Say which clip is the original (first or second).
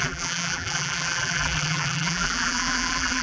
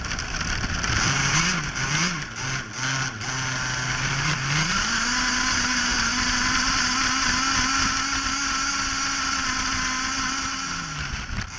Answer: second